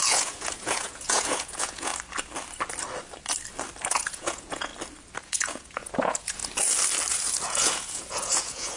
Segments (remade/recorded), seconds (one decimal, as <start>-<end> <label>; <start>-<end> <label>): 0.0-1.9 remade; 1.9-3.9 recorded; 3.9-4.7 remade; 4.7-5.2 recorded; 5.2-6.4 remade; 6.4-7.1 recorded; 7.1-8.8 remade